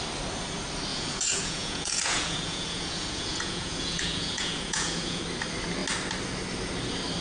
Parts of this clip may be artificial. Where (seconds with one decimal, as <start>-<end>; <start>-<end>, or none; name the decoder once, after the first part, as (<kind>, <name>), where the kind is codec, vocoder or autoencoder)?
0.9-5.2 (vocoder, Vocos)